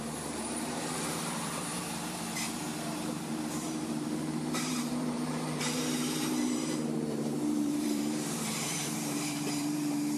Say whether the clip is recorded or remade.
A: remade